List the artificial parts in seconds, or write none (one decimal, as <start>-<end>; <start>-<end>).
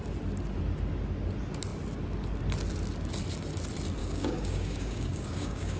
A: 4.0-5.8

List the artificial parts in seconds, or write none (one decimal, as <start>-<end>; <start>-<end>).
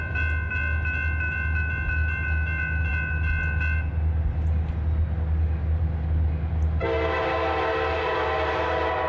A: none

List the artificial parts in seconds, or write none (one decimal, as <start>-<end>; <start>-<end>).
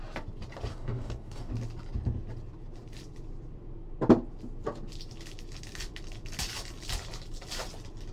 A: 0.7-1.5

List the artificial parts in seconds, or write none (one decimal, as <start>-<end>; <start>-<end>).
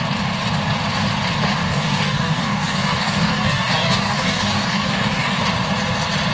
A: 1.6-5.4